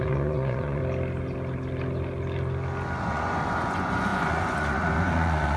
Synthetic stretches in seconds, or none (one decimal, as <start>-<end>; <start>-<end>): 0.0-0.8; 3.0-5.6